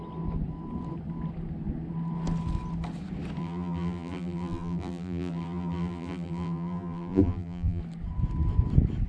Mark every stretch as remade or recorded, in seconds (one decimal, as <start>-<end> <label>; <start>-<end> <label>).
0.0-3.4 recorded; 3.4-7.8 remade; 7.8-9.1 recorded